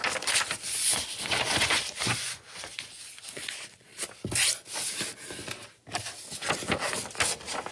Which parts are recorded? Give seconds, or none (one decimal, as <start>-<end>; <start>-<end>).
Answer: 0.0-0.6; 3.9-7.7